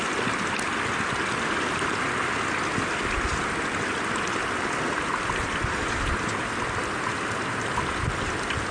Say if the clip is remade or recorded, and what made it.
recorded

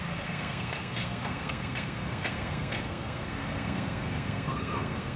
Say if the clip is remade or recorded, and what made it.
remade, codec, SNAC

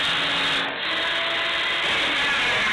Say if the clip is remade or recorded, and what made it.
recorded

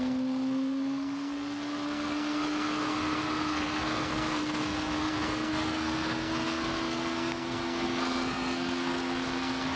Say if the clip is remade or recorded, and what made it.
remade, codec, SNAC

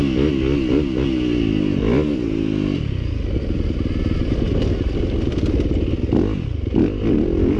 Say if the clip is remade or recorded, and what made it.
recorded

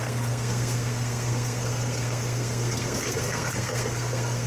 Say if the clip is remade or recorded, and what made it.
remade, codec, SNAC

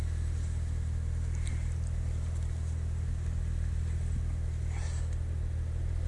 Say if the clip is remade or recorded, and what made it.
recorded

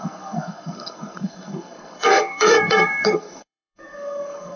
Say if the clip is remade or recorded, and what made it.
remade, codec, SNAC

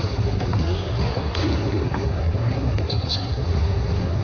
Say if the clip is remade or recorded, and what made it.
remade, codec, SNAC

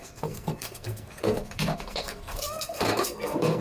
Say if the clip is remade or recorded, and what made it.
remade, codec, SNAC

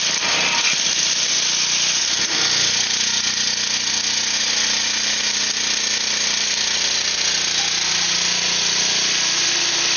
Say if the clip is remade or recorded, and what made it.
recorded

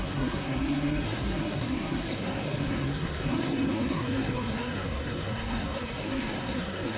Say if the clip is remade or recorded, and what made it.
remade, codec, SNAC